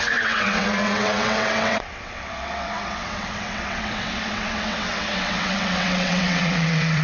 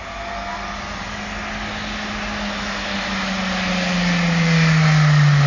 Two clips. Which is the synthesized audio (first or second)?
first